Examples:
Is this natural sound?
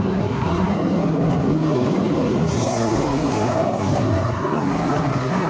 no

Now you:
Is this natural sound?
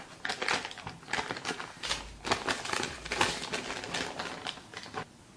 yes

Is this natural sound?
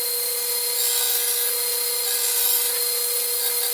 yes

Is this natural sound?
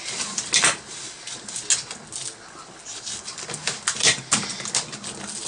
yes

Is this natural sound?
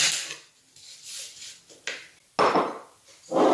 yes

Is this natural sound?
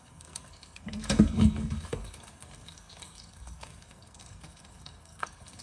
no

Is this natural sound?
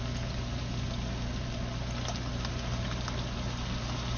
yes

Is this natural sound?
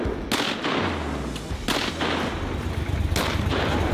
yes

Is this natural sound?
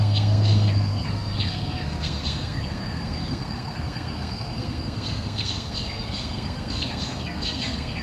no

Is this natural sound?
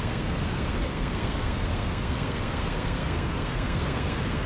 no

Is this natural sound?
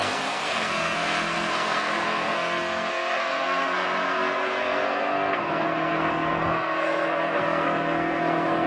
no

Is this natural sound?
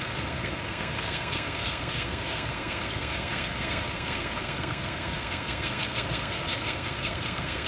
no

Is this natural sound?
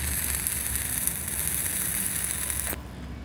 yes